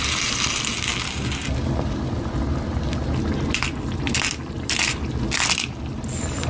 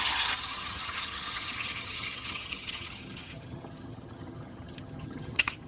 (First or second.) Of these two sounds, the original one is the first